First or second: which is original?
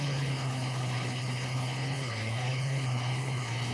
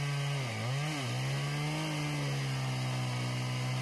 second